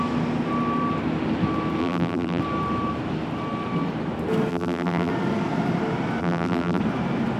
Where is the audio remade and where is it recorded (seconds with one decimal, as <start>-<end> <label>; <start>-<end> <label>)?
0.0-1.8 recorded; 1.8-2.4 remade; 2.4-4.5 recorded; 4.5-5.1 remade; 5.1-6.2 recorded; 6.2-6.8 remade; 6.8-7.4 recorded